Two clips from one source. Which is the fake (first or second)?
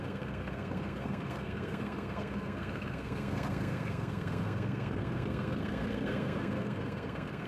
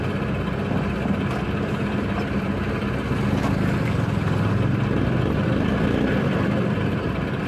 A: first